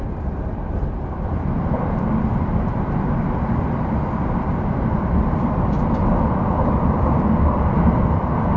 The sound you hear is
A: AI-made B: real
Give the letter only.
B